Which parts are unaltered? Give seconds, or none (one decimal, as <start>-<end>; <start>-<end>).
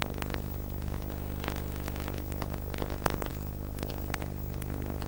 1.1-2.1